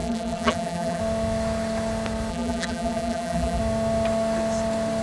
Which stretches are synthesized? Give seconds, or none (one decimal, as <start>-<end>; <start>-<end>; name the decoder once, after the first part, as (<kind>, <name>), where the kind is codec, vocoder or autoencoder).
0.0-1.0 (vocoder, BigVGAN v2); 2.3-3.6